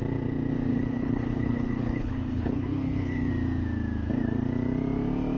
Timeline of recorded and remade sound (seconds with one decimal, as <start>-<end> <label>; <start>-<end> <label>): 0.0-0.7 recorded; 0.7-3.3 remade; 3.3-5.4 recorded